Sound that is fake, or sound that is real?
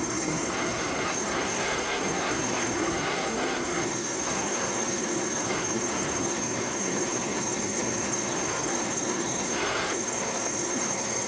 fake